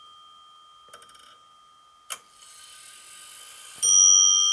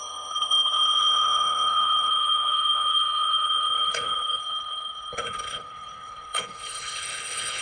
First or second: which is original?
first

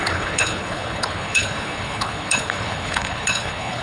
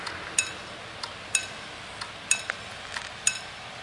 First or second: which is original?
second